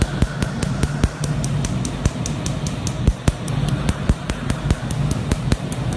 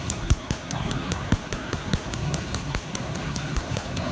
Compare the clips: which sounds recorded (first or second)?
first